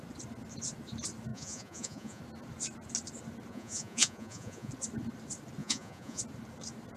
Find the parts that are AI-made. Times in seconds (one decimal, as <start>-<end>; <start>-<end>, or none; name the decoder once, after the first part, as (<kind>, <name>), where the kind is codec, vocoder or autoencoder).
1.3-2.2 (vocoder, Vocos); 3.5-4.7; 5.6-6.2